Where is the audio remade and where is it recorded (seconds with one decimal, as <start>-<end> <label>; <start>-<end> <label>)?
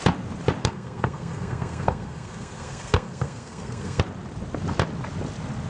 0.0-0.6 recorded; 0.6-4.0 remade; 4.0-5.7 recorded